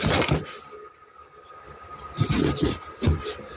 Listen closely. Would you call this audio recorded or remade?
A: recorded